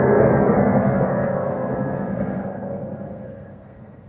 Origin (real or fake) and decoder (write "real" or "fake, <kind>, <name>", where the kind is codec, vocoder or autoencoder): fake, codec, SNAC